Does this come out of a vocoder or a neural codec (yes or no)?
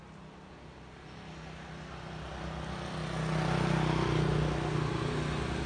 no